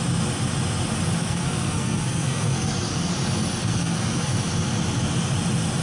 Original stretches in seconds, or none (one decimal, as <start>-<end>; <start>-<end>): 0.0-1.2; 3.1-3.6; 4.3-5.8